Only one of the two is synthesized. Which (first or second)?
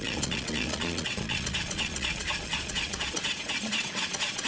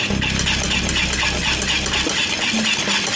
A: first